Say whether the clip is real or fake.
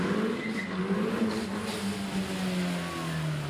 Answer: real